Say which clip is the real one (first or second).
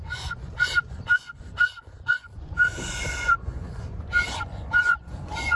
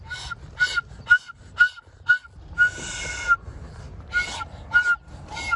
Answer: second